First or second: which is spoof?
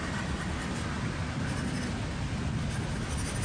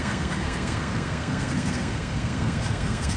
second